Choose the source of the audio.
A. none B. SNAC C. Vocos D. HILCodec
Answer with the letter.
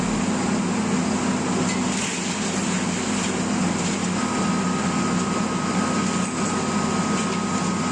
A